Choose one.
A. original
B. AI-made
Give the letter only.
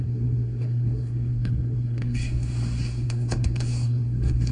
B